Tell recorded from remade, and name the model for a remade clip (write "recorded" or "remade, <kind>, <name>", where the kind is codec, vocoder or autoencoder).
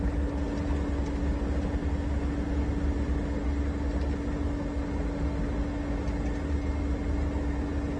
recorded